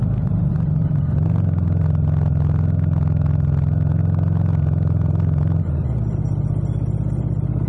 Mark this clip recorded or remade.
recorded